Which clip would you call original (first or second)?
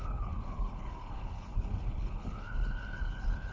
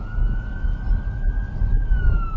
second